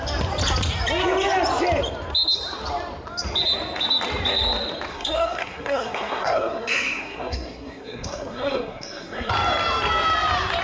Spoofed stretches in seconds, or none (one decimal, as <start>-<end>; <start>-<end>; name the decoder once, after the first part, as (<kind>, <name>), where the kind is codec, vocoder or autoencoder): 4.9-9.3 (codec, SNAC)